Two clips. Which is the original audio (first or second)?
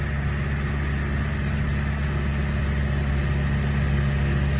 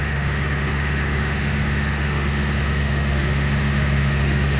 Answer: first